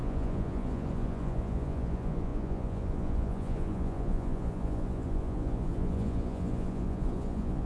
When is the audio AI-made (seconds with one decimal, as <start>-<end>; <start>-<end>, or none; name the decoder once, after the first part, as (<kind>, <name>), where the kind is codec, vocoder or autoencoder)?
0.0-7.7 (vocoder, Vocos)